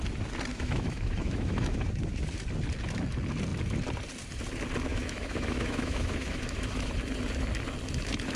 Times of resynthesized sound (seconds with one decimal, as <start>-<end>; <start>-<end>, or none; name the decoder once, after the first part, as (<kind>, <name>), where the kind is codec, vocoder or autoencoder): 0.5-1.8 (autoencoder, DAC-VAE); 4.9-6.9